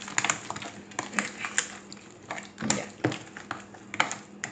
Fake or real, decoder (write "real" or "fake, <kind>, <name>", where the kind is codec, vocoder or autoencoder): real